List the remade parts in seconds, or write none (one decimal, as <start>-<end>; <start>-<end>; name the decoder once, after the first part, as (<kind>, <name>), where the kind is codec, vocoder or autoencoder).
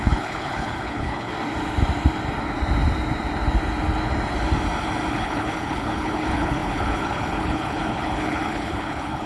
0.0-1.3 (codec, HILCodec); 5.1-9.3